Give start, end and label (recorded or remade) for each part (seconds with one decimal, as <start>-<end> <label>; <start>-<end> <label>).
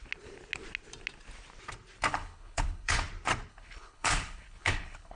0.0-2.1 recorded; 2.1-3.1 remade; 3.1-3.5 recorded; 3.5-5.2 remade